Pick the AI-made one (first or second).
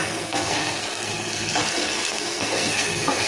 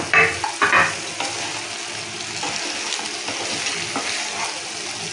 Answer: first